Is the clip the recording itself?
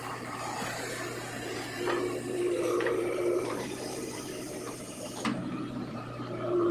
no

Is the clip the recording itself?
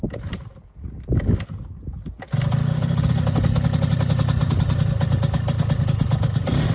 yes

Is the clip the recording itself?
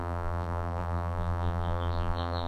no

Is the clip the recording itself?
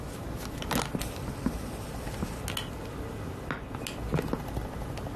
yes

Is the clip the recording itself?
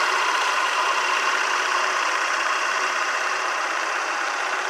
no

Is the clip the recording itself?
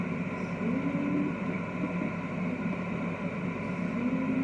yes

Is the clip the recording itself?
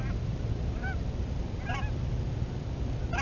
no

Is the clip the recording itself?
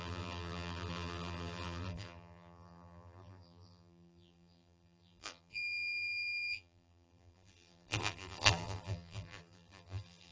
no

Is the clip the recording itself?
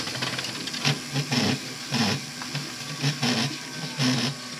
yes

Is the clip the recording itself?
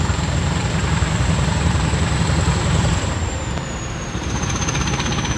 no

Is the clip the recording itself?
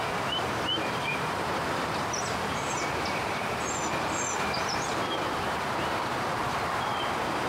no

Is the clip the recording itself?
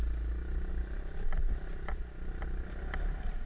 yes